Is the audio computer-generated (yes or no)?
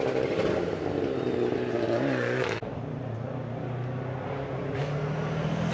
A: no